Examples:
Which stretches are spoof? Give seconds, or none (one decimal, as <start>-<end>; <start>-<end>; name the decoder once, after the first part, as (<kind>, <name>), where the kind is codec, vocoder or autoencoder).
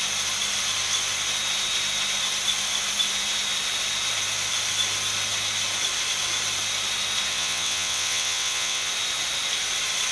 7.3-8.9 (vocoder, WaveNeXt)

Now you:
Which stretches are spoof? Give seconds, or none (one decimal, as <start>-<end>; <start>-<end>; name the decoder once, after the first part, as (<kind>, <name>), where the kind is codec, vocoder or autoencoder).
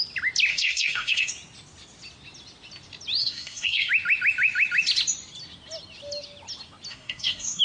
0.5-1.3 (codec, SNAC); 3.2-3.9; 6.9-7.6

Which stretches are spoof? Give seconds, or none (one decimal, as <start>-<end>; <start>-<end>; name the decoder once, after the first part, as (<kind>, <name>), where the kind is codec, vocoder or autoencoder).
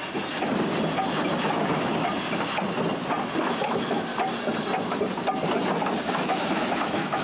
1.4-1.9 (autoencoder, DAC-VAE); 3.4-4.1; 6.1-7.2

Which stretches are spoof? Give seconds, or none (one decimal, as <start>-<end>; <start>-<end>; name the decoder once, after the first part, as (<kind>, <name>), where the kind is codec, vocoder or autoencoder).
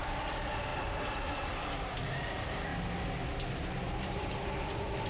0.0-2.7 (vocoder, BigVGAN v2); 3.7-5.1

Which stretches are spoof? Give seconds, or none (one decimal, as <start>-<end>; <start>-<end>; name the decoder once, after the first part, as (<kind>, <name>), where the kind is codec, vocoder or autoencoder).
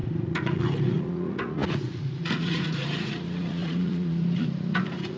0.0-5.2 (vocoder, Vocos)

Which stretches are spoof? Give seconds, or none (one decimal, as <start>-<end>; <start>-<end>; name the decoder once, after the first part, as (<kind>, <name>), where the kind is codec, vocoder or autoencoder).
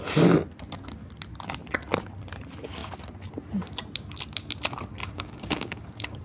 5.0-6.2 (codec, DAC)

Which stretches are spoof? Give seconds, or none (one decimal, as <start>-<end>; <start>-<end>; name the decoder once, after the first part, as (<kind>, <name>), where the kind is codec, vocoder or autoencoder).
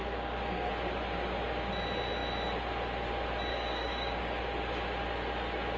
0.0-0.7 (codec, DAC); 3.5-4.4